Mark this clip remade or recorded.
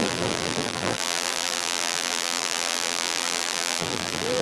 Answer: remade